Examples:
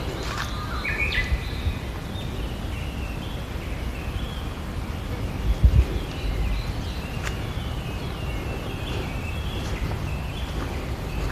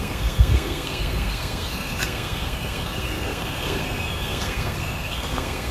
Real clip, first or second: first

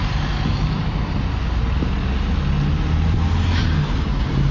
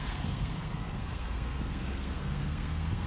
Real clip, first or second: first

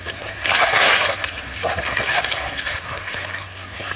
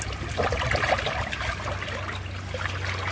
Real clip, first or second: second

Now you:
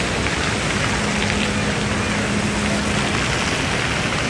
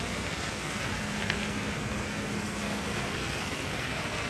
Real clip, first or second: first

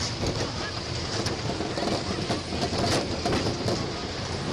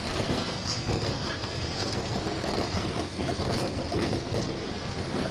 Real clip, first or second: first